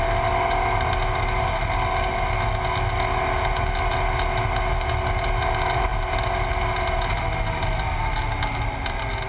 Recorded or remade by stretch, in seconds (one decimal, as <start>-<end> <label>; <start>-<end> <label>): 0.0-9.3 recorded